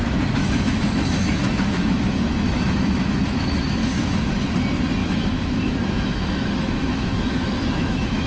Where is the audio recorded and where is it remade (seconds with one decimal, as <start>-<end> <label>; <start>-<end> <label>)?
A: 0.0-0.4 recorded; 0.4-4.3 remade; 4.3-5.0 recorded; 5.0-8.3 remade

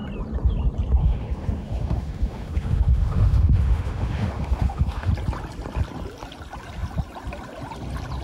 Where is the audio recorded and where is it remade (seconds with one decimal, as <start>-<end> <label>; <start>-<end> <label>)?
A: 0.0-1.0 recorded; 1.0-5.1 remade; 5.1-8.2 recorded

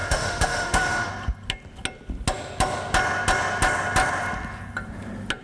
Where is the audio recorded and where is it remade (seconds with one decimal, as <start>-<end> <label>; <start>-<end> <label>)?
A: 0.0-1.1 remade; 1.1-5.4 recorded

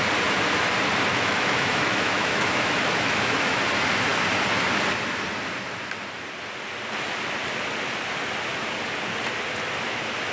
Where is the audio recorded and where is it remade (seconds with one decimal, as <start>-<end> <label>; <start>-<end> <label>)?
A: 0.0-1.1 recorded; 1.1-3.6 remade; 3.6-10.3 recorded

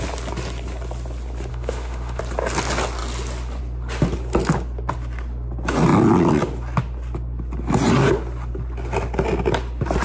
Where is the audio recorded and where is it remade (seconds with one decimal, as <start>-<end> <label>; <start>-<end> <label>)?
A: 0.0-1.5 recorded; 1.5-2.2 remade; 2.2-10.0 recorded

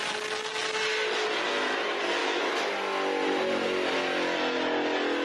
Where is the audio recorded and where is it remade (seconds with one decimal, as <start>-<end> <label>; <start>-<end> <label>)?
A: 0.0-2.2 recorded; 2.2-2.7 remade; 2.7-5.2 recorded

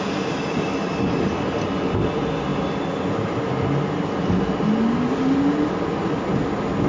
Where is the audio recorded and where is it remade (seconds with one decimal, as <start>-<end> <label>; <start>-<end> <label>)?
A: 0.0-6.9 recorded

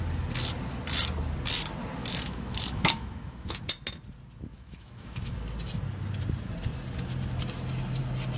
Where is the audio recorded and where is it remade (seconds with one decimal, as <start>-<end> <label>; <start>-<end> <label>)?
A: 0.0-2.0 recorded; 2.0-3.6 remade; 3.6-4.5 recorded; 4.5-5.3 remade; 5.3-8.4 recorded